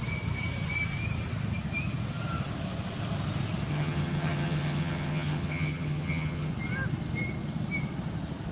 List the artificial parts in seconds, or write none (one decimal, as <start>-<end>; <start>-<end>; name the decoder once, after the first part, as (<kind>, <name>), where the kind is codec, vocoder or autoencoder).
3.7-6.5 (vocoder, HiFi-GAN)